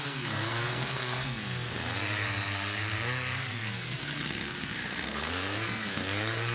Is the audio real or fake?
fake